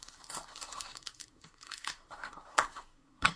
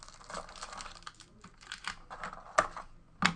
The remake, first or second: first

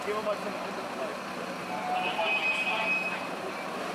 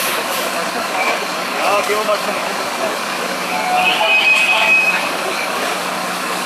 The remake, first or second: second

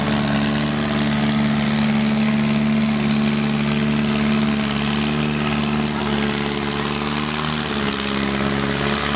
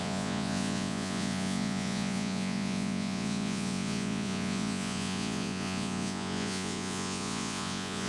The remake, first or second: second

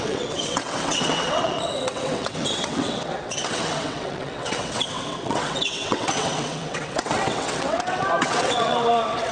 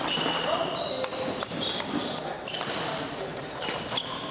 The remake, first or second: first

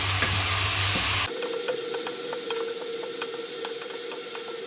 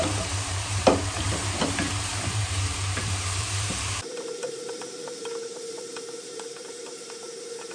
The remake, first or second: second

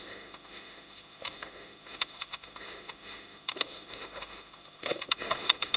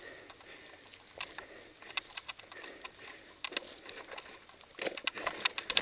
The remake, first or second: first